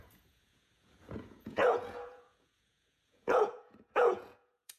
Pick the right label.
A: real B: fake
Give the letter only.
B